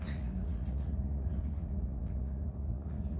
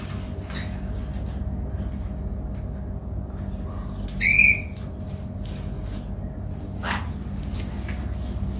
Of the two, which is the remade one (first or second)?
first